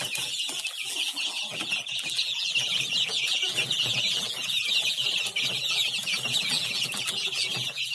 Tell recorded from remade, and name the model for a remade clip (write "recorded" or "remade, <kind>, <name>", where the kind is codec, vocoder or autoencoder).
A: remade, vocoder, BigVGAN v2